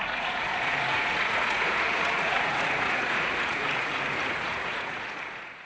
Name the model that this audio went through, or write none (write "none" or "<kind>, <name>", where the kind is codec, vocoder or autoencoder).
vocoder, Vocos